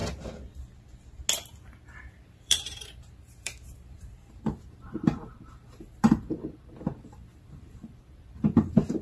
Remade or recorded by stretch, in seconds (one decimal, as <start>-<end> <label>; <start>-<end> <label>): 0.0-2.1 recorded; 2.1-9.0 remade